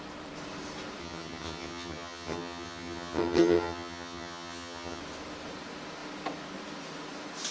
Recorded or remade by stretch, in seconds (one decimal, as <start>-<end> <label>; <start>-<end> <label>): 0.0-1.0 recorded; 1.0-5.0 remade; 5.0-7.5 recorded

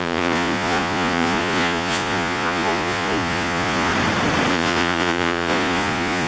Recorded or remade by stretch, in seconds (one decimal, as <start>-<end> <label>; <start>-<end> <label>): 0.0-3.9 remade; 3.9-4.5 recorded; 4.5-6.3 remade

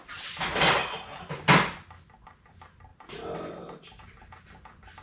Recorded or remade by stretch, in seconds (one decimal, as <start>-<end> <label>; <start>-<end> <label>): 0.0-5.0 recorded

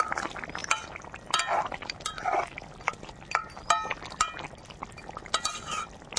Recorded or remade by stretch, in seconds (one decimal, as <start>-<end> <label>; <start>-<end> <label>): 0.0-6.2 recorded

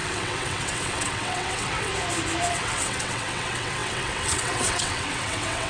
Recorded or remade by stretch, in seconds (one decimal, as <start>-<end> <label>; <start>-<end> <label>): 0.0-1.9 remade; 1.9-2.5 recorded; 2.5-5.7 remade